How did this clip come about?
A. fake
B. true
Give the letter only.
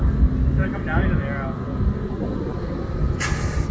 B